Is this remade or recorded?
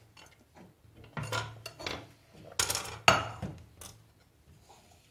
recorded